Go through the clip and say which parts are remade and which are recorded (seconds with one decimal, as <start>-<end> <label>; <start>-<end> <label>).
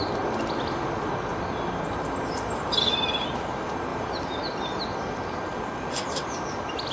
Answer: 0.0-6.9 recorded